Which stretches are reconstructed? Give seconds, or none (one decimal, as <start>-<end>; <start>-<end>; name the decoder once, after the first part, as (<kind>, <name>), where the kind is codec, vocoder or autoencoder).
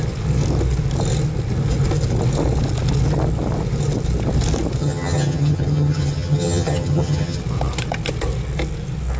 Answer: 4.8-7.4 (vocoder, HiFi-GAN)